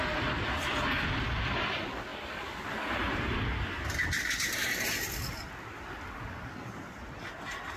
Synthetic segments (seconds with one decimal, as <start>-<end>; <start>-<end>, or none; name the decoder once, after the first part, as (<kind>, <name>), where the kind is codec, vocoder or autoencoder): none